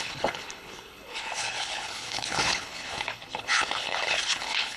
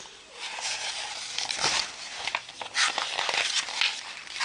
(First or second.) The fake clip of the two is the first